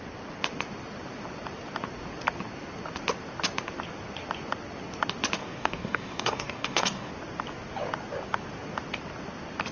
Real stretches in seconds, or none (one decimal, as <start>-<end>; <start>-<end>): 0.0-5.4; 7.1-9.7